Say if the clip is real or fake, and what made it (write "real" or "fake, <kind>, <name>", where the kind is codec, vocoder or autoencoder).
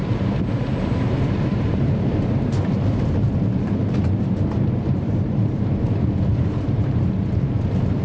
fake, vocoder, BigVGAN v2